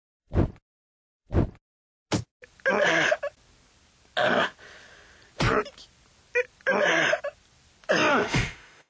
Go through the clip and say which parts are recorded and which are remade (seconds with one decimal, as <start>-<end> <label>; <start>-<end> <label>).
0.0-8.1 recorded; 8.1-8.9 remade